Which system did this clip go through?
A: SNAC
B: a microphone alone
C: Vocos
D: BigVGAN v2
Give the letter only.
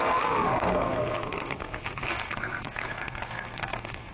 A